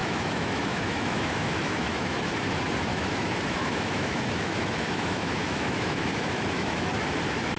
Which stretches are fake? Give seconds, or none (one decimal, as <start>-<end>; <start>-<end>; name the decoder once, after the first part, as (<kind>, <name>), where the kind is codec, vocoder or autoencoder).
0.0-2.2 (autoencoder, DAC-VAE); 2.9-6.9